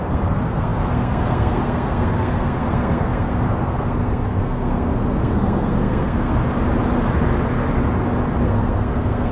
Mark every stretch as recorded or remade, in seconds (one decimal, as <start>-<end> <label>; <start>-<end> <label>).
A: 0.0-6.4 remade; 6.4-8.4 recorded; 8.4-9.3 remade